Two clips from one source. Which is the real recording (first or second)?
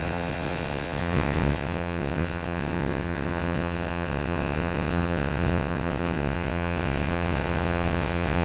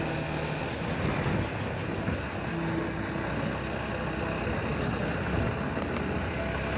second